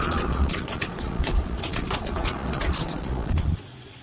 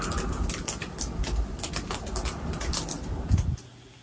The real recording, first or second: second